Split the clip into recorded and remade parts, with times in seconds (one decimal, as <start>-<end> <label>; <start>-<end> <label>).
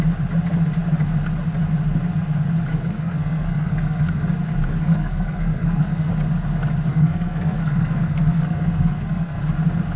0.0-2.7 recorded; 2.7-4.3 remade; 4.3-4.7 recorded; 4.7-6.1 remade; 6.1-6.9 recorded; 6.9-9.4 remade; 9.4-10.0 recorded